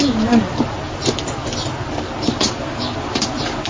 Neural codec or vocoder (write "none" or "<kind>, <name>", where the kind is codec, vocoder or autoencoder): none